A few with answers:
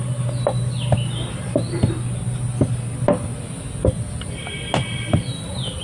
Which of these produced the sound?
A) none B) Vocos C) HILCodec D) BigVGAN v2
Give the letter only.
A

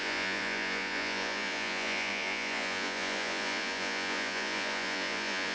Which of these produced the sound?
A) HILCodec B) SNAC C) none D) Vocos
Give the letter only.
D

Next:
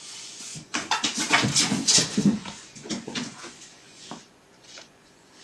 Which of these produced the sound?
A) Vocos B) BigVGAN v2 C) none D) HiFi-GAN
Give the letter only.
A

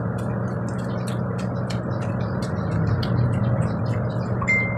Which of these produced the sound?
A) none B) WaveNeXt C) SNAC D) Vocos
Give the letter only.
A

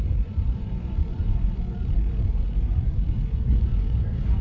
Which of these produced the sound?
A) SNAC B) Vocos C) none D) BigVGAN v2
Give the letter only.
B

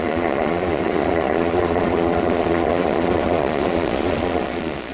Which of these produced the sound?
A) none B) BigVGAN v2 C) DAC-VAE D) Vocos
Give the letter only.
D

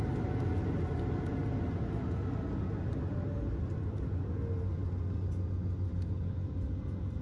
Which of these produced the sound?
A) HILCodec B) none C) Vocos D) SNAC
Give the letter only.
B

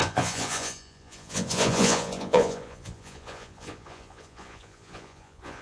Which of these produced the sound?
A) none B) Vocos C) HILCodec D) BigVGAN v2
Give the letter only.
B